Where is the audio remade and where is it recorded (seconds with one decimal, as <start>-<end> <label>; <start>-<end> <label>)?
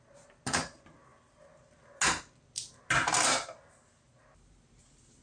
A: 0.0-5.2 recorded